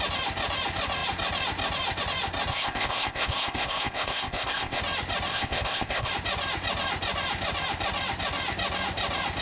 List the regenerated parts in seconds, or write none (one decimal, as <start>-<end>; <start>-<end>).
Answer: 2.5-4.8; 5.3-6.1